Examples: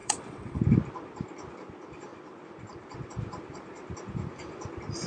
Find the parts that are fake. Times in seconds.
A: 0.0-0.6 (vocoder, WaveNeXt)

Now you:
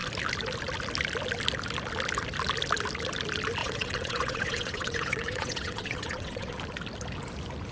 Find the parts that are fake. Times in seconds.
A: 3.6-6.6 (vocoder, WaveNeXt)

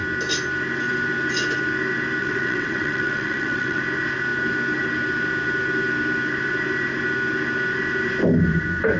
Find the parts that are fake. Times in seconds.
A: 2.2-3.8 (vocoder, WaveNeXt)

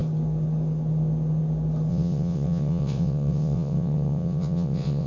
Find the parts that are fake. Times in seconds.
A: 1.9-5.1 (vocoder, WaveNeXt)

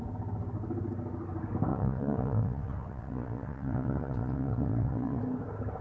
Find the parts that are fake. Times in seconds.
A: 1.7-5.2 (vocoder, WaveNeXt)

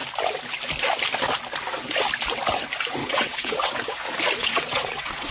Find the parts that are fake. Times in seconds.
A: 3.0-3.7 (vocoder, WaveNeXt); 4.4-5.3